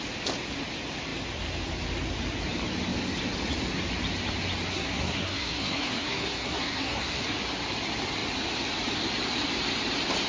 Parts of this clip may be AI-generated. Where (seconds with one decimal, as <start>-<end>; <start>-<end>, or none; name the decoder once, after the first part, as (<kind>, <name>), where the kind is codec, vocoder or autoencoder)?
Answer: 4.7-7.2 (codec, SNAC)